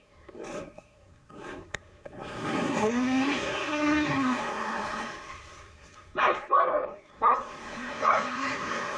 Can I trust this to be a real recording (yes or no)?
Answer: no